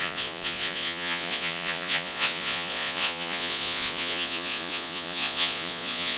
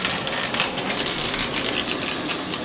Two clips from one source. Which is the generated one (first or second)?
first